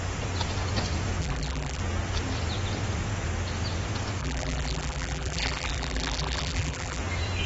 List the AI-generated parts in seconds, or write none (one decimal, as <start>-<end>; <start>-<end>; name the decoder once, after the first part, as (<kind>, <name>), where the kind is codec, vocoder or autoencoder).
1.2-1.8 (vocoder, BigVGAN v2); 4.2-7.0